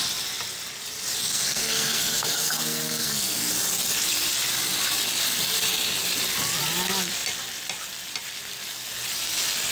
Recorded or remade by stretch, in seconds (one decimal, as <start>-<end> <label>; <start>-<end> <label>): 0.0-1.2 recorded; 1.2-3.5 remade; 3.5-9.7 recorded